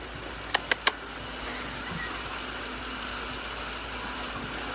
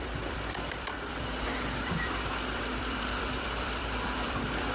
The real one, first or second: first